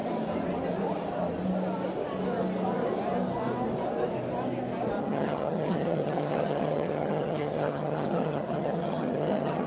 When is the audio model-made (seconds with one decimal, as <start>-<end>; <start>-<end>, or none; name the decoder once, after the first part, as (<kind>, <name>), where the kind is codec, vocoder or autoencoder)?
5.0-9.7 (vocoder, HiFi-GAN)